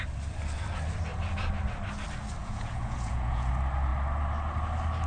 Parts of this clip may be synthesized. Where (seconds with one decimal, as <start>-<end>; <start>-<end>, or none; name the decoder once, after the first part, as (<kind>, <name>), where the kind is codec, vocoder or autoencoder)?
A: 2.4-3.5 (vocoder, Vocos)